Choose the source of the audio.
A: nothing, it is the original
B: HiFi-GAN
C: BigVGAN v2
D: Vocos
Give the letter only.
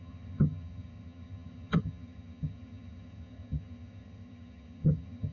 B